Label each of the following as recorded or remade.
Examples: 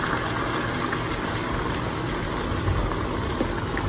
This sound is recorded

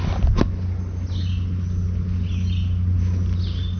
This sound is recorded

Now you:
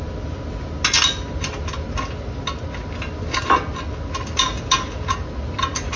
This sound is recorded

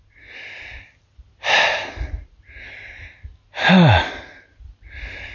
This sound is recorded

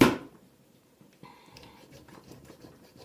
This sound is remade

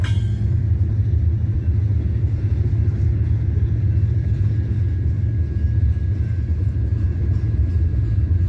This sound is remade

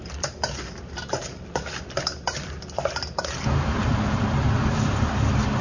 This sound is remade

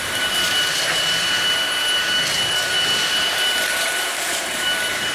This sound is remade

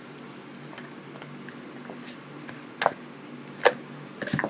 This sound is recorded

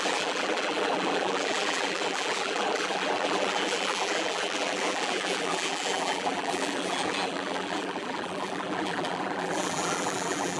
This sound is remade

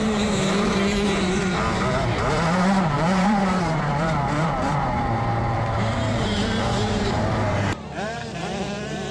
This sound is remade